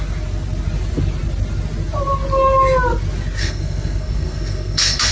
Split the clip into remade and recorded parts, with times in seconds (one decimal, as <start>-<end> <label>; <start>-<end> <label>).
0.0-3.4 recorded; 3.4-5.1 remade